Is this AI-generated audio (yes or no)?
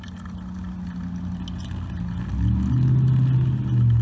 no